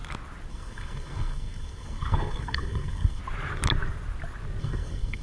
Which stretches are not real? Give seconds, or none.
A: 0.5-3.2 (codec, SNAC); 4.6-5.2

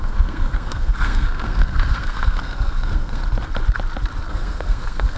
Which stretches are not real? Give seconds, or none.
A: 0.0-3.2 (codec, SNAC); 4.3-5.2

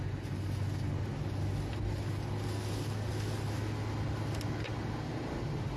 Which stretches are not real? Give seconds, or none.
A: none

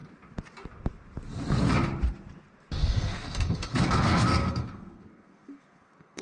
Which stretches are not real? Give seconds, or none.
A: 2.8-6.2 (codec, SNAC)

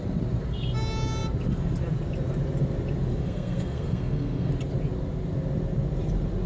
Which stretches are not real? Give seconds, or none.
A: 3.1-4.5 (codec, SNAC)